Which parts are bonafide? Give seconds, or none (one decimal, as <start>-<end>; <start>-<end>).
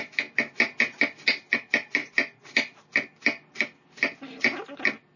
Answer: 0.0-5.2